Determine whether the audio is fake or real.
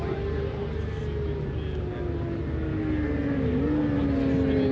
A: real